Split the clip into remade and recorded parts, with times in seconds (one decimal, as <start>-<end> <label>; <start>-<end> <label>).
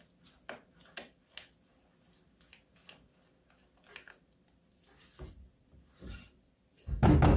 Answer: 0.0-7.4 recorded